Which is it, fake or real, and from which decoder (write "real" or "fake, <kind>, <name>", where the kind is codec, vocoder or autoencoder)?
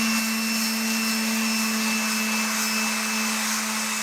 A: real